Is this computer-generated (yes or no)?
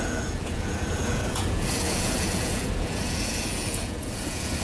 yes